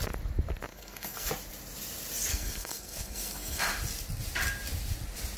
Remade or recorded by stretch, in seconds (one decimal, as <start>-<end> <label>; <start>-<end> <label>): 0.0-0.7 recorded; 0.7-1.3 remade; 1.3-2.3 recorded; 2.3-3.6 remade; 3.6-5.4 recorded